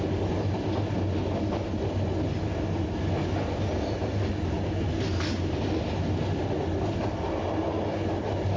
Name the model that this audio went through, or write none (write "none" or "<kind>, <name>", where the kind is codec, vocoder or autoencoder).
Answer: none